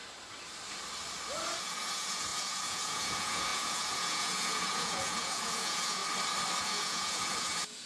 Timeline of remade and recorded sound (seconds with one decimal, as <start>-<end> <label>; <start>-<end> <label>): 0.0-1.6 recorded; 1.6-6.0 remade; 6.0-6.6 recorded; 6.6-7.9 remade